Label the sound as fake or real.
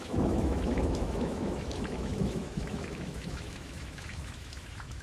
fake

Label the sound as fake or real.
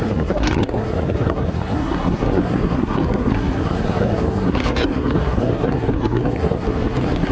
fake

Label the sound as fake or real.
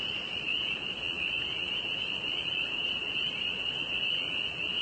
fake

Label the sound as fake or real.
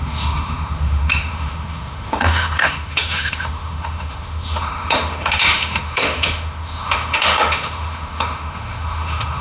fake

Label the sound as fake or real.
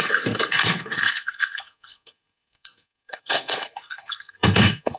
fake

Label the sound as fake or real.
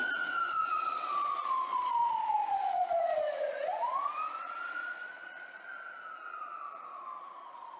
fake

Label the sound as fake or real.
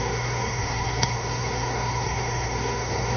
fake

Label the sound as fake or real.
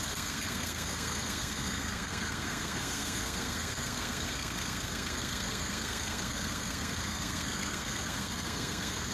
fake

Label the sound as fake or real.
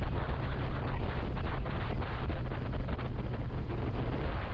real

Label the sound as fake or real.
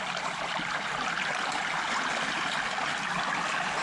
real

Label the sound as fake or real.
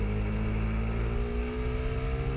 real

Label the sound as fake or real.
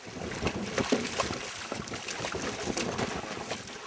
real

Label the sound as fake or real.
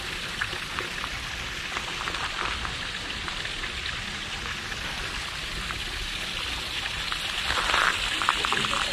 real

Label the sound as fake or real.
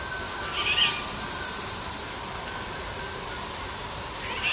real